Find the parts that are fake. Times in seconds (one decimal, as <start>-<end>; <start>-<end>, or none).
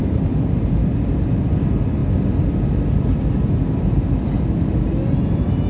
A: none